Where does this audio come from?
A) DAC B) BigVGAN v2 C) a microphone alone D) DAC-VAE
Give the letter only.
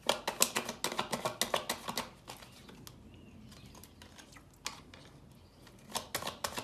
C